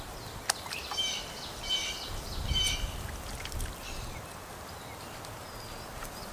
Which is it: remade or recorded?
recorded